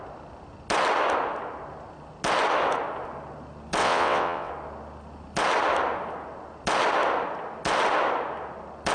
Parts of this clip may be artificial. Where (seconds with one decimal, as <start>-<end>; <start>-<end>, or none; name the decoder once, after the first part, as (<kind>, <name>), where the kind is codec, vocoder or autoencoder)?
3.8-4.5 (vocoder, WaveNeXt)